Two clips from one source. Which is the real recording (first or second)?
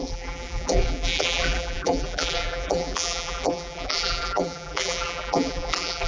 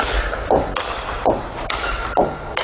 second